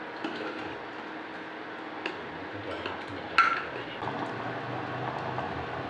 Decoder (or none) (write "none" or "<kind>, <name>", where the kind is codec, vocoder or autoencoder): none